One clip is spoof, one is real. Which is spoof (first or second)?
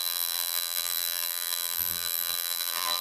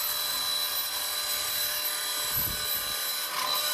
first